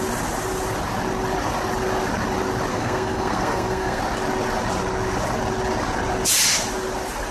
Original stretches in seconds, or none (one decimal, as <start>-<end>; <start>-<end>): 0.0-2.7; 4.0-7.3